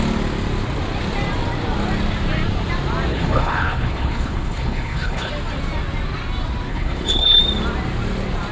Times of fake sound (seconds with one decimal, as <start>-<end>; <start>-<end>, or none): 3.1-5.3; 6.7-7.4